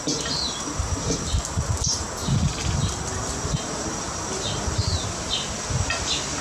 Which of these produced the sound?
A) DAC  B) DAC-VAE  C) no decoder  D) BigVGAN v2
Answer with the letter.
C